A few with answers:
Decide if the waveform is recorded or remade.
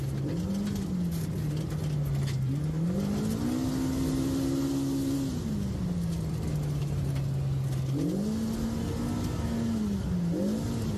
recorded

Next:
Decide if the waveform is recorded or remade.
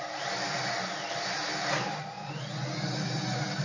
recorded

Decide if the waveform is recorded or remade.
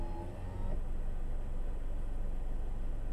recorded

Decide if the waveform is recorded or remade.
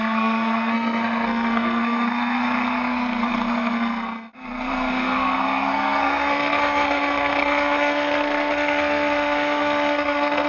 remade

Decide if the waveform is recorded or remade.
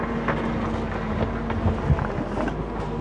recorded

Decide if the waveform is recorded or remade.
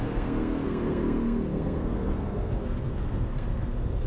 remade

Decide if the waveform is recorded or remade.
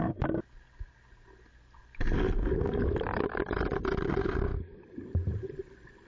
recorded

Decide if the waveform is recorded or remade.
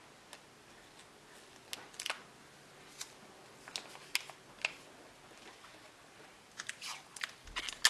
recorded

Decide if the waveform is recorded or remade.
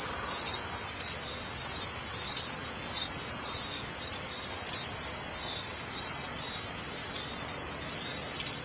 recorded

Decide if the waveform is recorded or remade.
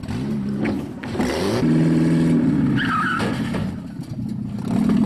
recorded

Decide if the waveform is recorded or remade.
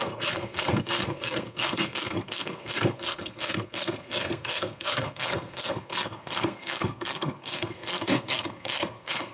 remade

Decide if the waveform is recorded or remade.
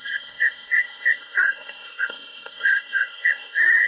remade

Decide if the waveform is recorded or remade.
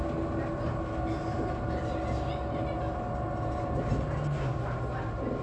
recorded